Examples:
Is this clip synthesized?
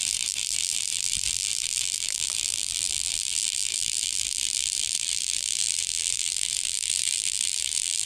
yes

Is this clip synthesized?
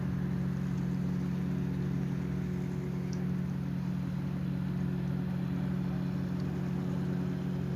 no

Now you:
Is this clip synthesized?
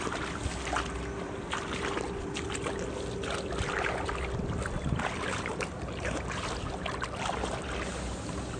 no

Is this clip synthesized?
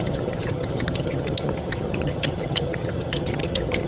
yes